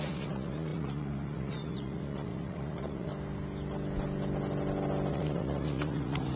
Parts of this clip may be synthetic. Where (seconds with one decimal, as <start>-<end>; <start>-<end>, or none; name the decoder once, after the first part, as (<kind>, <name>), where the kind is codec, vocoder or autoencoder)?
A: 0.0-3.1 (vocoder, Vocos); 5.1-6.4